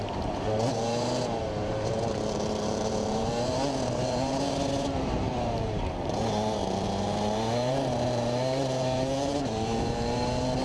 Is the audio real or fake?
fake